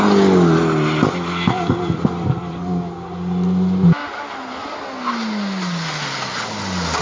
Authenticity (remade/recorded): recorded